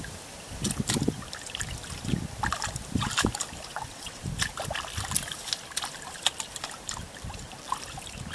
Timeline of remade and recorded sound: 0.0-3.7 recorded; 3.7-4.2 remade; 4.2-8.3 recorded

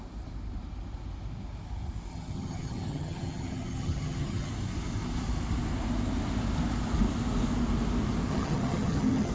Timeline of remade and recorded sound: 0.0-2.1 recorded; 2.1-4.5 remade; 4.5-8.3 recorded; 8.3-9.3 remade